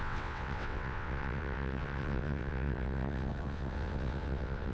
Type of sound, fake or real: fake